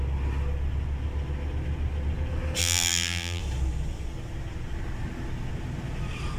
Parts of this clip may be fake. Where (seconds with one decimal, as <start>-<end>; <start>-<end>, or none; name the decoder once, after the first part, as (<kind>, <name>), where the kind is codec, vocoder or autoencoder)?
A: 2.6-3.4 (vocoder, BigVGAN v2)

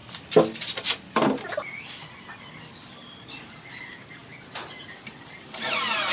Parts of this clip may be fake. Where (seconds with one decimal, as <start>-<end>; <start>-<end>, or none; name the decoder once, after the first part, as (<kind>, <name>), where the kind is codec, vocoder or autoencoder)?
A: 3.7-6.1 (vocoder, BigVGAN v2)